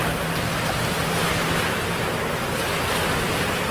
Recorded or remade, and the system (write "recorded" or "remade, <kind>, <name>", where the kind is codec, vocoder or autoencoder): recorded